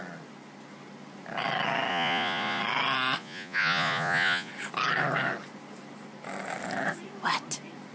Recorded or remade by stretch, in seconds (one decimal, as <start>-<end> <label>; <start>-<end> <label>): 0.0-1.9 recorded; 1.9-2.6 remade; 2.6-3.2 recorded; 3.2-4.5 remade; 4.5-7.9 recorded